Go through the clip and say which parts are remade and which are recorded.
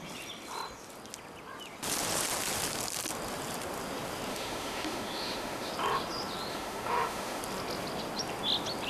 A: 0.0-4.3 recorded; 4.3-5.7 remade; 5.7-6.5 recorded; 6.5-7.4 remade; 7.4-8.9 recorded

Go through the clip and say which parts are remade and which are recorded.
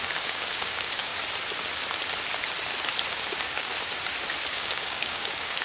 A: 0.0-1.1 remade; 1.1-3.1 recorded; 3.1-3.7 remade; 3.7-4.5 recorded; 4.5-5.6 remade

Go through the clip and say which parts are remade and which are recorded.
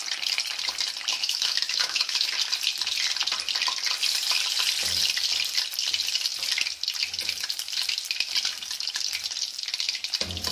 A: 0.0-1.1 recorded; 1.1-2.3 remade; 2.3-10.5 recorded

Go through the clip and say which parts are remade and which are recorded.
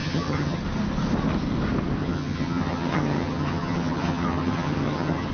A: 0.0-0.6 remade; 0.6-2.0 recorded; 2.0-5.3 remade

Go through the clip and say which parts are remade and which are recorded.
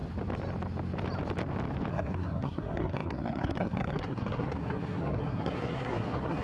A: 0.0-1.9 recorded; 1.9-6.4 remade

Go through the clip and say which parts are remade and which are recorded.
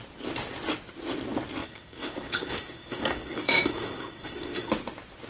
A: 0.0-1.6 recorded; 1.6-4.7 remade; 4.7-5.3 recorded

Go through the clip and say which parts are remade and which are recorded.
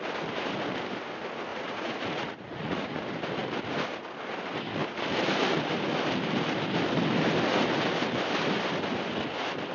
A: 0.0-1.5 recorded; 1.5-3.0 remade; 3.0-9.7 recorded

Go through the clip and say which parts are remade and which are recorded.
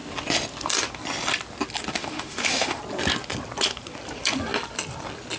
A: 0.0-1.9 recorded; 1.9-2.8 remade; 2.8-5.4 recorded